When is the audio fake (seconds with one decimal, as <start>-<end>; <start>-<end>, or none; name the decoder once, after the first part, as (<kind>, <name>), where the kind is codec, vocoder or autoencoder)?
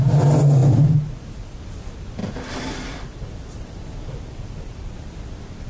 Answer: 2.2-4.6 (vocoder, BigVGAN v2)